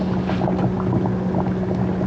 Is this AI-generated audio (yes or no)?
no